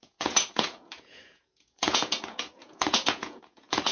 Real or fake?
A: fake